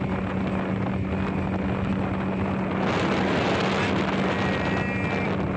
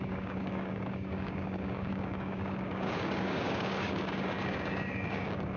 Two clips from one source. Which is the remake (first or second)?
second